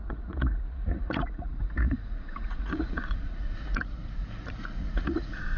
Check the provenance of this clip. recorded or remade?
remade